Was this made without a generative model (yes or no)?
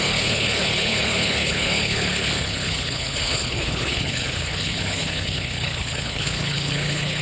no